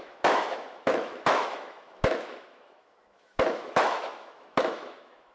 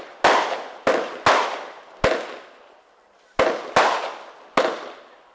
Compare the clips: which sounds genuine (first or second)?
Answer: second